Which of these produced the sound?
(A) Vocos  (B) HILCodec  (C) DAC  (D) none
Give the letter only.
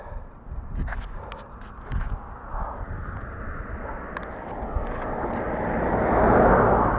D